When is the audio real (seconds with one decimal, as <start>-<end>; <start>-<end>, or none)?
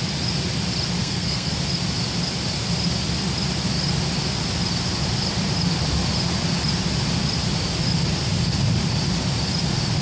0.0-1.0; 1.5-10.0